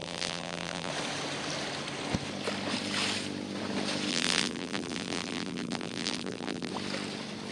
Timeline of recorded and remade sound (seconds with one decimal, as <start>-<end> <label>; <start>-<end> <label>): 0.0-0.9 remade; 0.9-4.1 recorded; 4.1-6.7 remade; 6.7-7.5 recorded